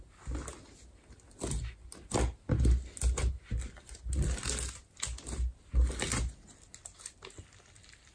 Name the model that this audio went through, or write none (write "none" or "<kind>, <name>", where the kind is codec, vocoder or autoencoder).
none